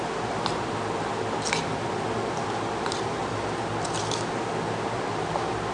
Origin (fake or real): real